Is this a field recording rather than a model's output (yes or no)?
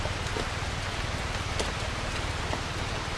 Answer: yes